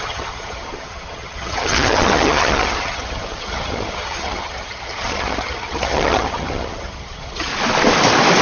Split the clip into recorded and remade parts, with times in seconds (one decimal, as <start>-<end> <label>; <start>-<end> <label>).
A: 0.0-7.5 remade; 7.5-8.4 recorded